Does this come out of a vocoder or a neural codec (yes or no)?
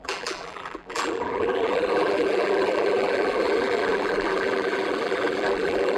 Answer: yes